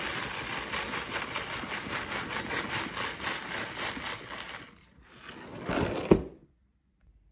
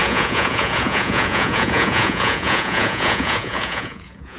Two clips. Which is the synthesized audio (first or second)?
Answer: second